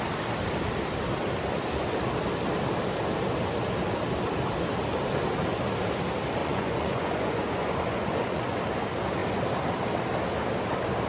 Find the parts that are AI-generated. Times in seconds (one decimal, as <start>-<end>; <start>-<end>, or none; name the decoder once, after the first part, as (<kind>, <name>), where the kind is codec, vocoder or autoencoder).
6.4-8.6 (vocoder, Vocos)

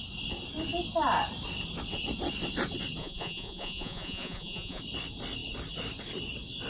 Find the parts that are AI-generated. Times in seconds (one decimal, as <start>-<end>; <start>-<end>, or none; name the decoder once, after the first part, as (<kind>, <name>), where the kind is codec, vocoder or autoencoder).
3.0-4.8 (vocoder, Vocos)